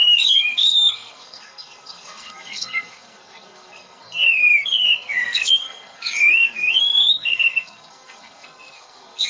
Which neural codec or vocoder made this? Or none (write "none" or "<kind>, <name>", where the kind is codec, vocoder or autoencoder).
codec, SNAC